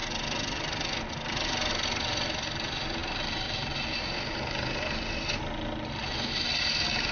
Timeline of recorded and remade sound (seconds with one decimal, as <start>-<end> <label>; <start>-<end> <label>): 0.0-7.1 recorded